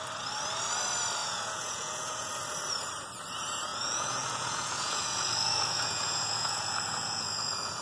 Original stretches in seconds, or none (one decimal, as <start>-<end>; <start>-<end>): 0.0-1.2; 2.3-3.7